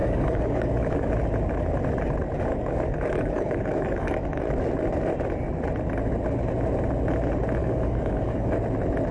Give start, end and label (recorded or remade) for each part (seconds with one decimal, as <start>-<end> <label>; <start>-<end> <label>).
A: 0.0-1.1 remade; 1.1-2.5 recorded; 2.5-4.4 remade; 4.4-7.6 recorded; 7.6-8.5 remade; 8.5-9.1 recorded